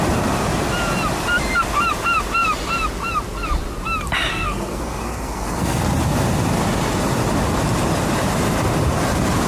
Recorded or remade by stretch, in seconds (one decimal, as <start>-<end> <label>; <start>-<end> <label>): 0.0-4.3 recorded; 4.3-5.8 remade; 5.8-9.5 recorded

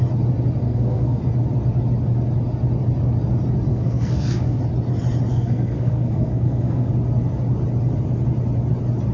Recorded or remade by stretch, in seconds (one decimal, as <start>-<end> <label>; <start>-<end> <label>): 0.0-0.6 recorded; 0.6-1.2 remade; 1.2-3.7 recorded; 3.7-4.6 remade; 4.6-5.3 recorded; 5.3-6.9 remade; 6.9-9.1 recorded